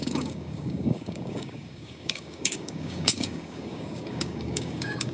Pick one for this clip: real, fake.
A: fake